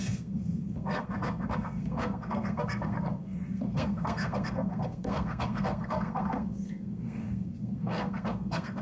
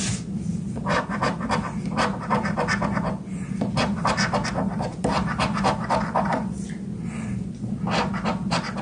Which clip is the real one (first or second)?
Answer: second